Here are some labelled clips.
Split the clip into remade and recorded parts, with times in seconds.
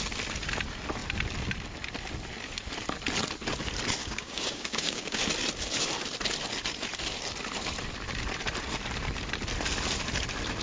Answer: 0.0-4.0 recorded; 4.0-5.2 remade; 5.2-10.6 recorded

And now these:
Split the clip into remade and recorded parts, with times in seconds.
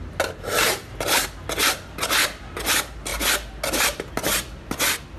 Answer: 0.0-5.2 recorded